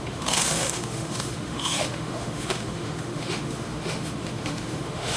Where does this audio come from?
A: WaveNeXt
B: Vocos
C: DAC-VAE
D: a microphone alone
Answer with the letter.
C